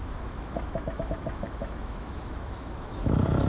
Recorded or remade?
remade